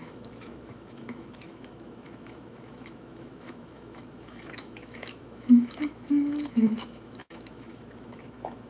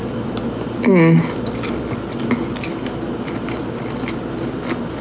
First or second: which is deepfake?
first